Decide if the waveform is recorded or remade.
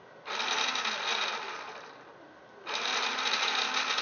recorded